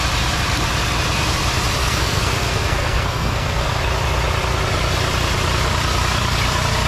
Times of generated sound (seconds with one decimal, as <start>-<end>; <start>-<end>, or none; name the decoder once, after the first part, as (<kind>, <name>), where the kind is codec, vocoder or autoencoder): 1.8-3.8 (codec, SNAC)